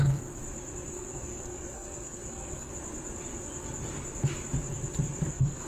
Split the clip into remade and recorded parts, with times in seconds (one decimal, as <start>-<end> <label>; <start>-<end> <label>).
0.0-0.4 remade; 0.4-0.9 recorded; 0.9-2.7 remade; 2.7-5.3 recorded; 5.3-5.7 remade